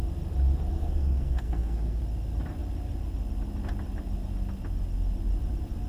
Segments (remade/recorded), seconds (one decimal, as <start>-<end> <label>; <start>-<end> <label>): 0.0-0.7 recorded; 0.7-2.0 remade; 2.0-5.9 recorded